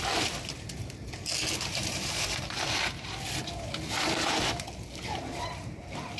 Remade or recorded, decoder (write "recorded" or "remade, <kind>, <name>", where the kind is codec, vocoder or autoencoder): recorded